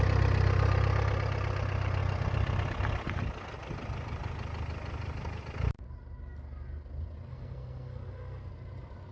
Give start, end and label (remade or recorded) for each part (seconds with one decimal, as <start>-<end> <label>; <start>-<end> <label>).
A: 0.0-7.3 recorded; 7.3-8.5 remade; 8.5-9.1 recorded